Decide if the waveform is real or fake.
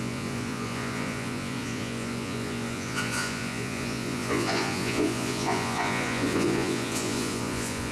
fake